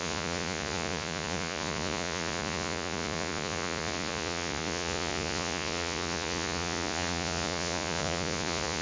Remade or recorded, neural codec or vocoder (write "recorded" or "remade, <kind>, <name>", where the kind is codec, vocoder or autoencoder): remade, vocoder, Vocos